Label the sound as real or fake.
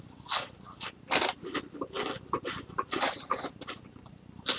real